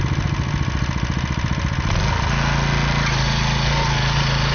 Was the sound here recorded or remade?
recorded